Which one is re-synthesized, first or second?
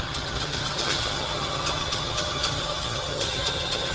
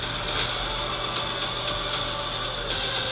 first